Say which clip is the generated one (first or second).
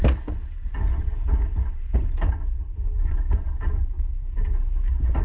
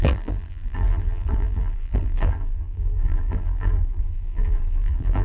second